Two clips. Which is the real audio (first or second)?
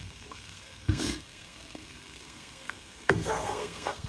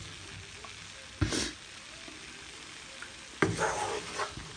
second